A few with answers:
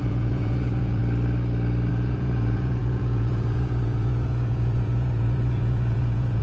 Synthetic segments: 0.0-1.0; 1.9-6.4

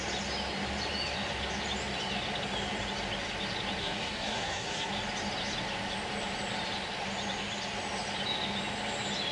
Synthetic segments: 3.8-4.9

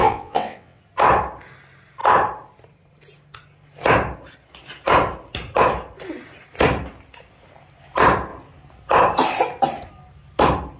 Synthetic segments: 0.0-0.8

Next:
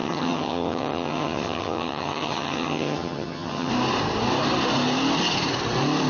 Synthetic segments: 0.0-3.7